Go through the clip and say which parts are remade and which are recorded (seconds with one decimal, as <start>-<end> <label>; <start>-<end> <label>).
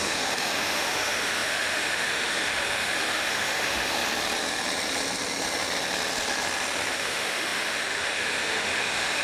0.0-4.0 remade; 4.0-6.9 recorded; 6.9-9.2 remade